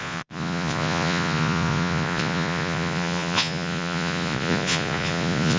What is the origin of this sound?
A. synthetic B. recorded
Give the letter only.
A